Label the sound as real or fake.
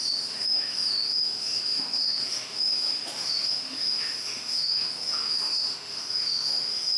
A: fake